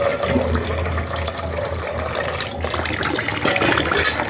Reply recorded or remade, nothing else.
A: recorded